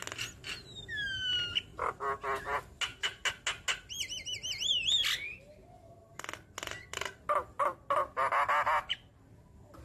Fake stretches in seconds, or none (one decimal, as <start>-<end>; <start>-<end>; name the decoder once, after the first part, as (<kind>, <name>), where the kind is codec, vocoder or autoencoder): none